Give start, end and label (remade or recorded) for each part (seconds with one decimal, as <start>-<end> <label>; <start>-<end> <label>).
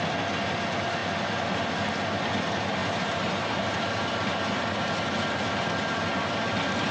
0.0-1.0 recorded; 1.0-1.7 remade; 1.7-2.8 recorded; 2.8-4.2 remade; 4.2-6.9 recorded